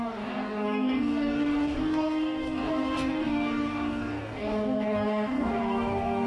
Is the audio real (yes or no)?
no